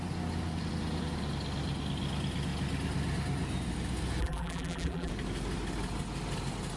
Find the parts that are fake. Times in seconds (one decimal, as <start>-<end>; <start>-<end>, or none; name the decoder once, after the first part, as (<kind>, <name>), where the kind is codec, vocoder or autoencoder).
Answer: 4.2-5.1 (vocoder, BigVGAN v2)